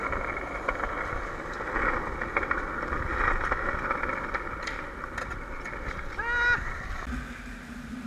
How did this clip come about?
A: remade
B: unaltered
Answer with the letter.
B